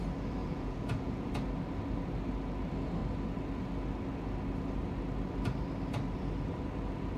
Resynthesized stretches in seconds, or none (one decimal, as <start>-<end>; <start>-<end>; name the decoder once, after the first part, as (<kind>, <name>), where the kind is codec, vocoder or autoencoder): 0.4-1.3 (vocoder, Vocos)